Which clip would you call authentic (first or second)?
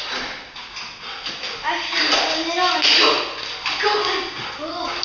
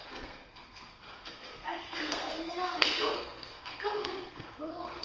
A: first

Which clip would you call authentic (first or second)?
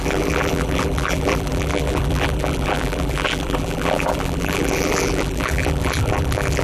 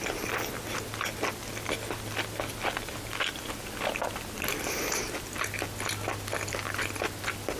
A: second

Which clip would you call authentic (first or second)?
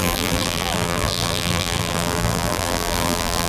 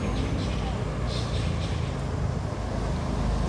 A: second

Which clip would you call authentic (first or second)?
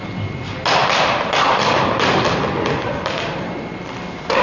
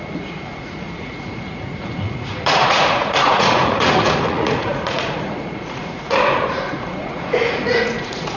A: first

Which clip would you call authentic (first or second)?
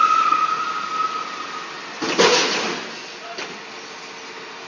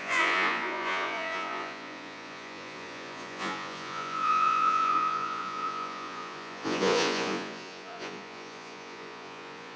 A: first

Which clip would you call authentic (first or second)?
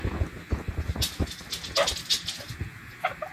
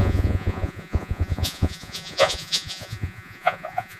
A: first